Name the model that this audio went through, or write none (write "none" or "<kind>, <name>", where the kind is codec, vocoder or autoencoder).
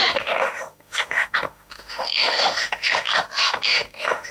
autoencoder, DAC-VAE